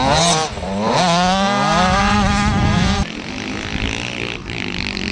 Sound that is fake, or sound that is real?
real